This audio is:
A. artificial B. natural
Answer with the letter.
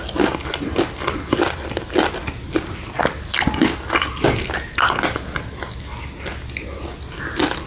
B